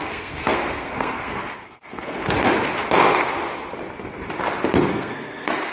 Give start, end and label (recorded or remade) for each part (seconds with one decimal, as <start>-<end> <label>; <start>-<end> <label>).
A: 0.0-2.2 remade; 2.2-4.9 recorded; 4.9-5.7 remade